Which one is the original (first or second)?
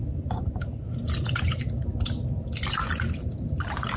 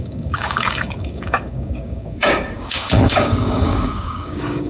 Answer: first